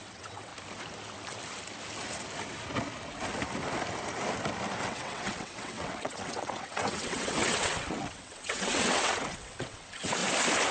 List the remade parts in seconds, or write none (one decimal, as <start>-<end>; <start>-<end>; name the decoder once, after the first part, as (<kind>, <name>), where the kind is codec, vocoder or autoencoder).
0.0-0.5 (vocoder, WaveNeXt); 4.8-10.2